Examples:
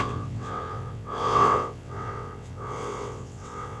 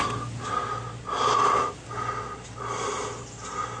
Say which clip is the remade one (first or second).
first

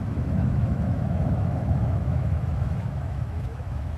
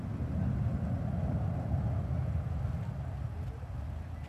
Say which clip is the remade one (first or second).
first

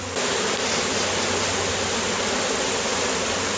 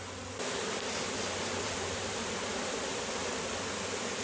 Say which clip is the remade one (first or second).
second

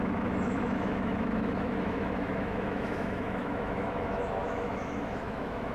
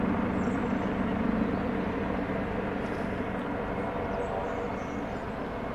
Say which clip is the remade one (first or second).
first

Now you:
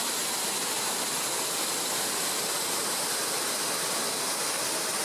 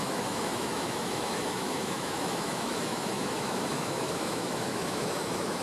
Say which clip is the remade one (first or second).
second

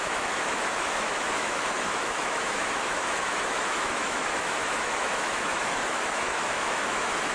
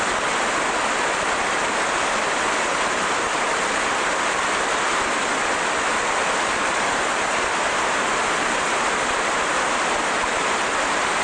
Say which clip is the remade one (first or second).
first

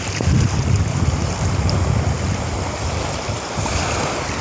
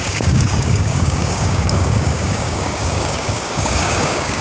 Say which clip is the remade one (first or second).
second